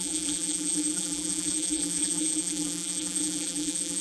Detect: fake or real fake